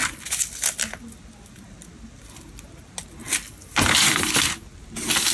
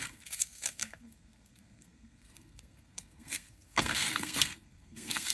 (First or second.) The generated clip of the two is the second